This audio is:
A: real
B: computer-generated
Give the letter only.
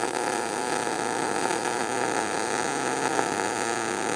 A